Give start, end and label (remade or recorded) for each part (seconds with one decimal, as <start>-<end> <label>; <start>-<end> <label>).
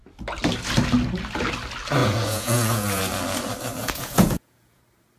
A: 0.0-2.0 recorded; 2.0-3.0 remade; 3.0-3.8 recorded; 3.8-4.8 remade; 4.8-5.2 recorded